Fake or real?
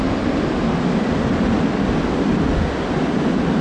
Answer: real